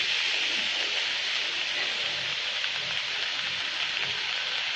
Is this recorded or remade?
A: recorded